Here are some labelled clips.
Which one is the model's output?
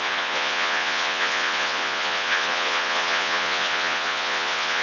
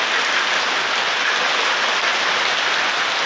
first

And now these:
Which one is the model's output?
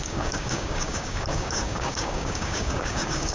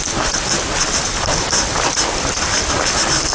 first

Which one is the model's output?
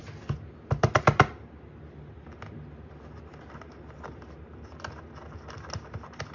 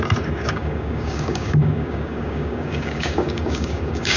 second